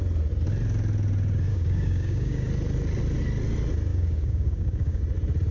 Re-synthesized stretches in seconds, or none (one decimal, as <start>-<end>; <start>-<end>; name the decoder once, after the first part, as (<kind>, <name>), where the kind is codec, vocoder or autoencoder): 1.5-2.5 (codec, DAC); 3.9-5.0